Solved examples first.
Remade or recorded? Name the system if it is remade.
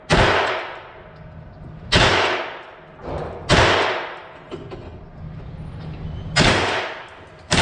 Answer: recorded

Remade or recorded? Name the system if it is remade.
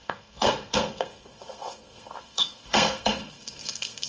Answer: remade, codec, SNAC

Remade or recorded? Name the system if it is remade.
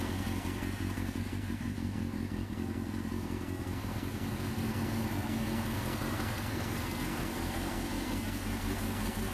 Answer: remade, codec, SNAC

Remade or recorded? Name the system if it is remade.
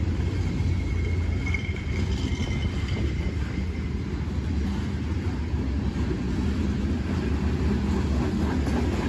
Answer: recorded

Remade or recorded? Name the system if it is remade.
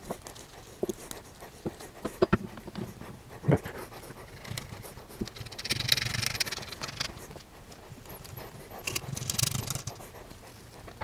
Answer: recorded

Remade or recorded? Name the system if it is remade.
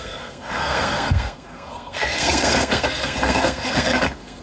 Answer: remade, codec, SNAC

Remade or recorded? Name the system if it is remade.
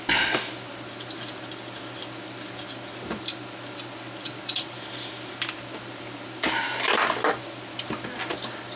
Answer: recorded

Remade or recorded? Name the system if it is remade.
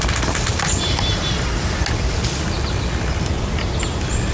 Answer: recorded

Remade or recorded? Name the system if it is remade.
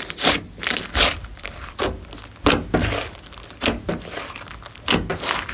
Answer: recorded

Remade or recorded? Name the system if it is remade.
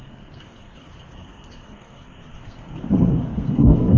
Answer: remade, codec, SNAC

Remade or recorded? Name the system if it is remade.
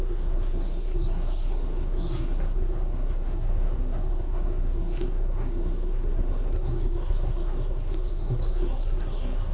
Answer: remade, codec, SNAC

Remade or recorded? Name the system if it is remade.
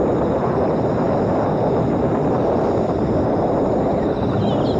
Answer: recorded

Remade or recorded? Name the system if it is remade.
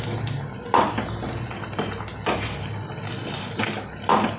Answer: recorded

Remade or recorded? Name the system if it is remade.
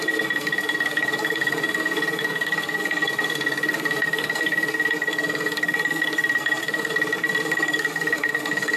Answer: remade, codec, SNAC